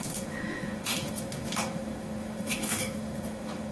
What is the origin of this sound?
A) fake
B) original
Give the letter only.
A